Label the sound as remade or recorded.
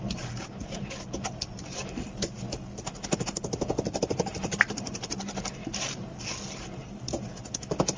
remade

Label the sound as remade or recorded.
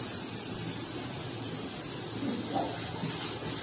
recorded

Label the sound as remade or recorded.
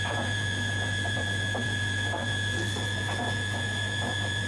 remade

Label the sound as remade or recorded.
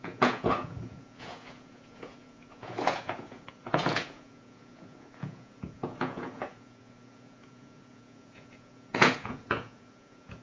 remade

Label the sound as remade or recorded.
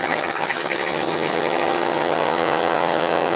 remade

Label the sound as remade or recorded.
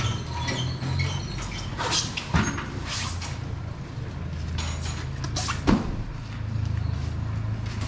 recorded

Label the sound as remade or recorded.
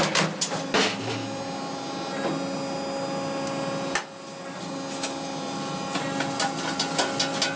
recorded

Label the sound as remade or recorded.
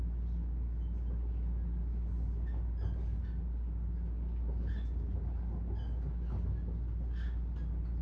recorded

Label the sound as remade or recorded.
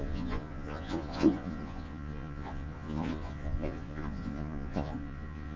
remade